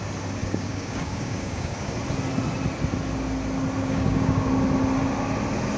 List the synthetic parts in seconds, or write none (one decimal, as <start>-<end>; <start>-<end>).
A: 0.4-1.9; 3.8-4.5